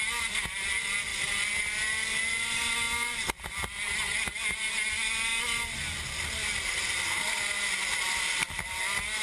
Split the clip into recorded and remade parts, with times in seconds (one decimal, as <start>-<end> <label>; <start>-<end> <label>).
0.0-9.2 recorded